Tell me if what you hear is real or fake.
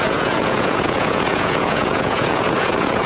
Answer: fake